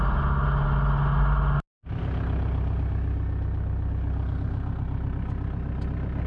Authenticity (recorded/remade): recorded